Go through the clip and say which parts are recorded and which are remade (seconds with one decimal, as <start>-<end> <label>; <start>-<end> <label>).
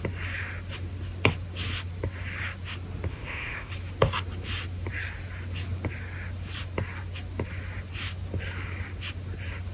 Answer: 0.0-3.1 recorded; 3.1-3.7 remade; 3.7-9.7 recorded